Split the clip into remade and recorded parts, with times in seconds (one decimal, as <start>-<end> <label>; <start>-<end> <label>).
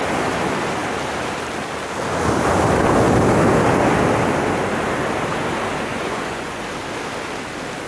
0.0-5.9 recorded; 5.9-6.6 remade; 6.6-7.9 recorded